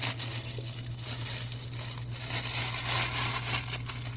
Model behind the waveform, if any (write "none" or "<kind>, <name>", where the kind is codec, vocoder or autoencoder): none